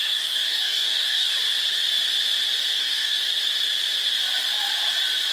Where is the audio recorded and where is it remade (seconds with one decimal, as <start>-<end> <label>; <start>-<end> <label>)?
0.0-1.3 remade; 1.3-2.8 recorded; 2.8-3.2 remade; 3.2-5.3 recorded